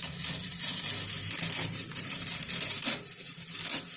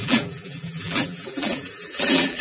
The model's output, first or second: second